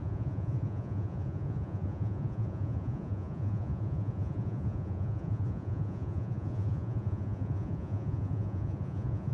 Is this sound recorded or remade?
remade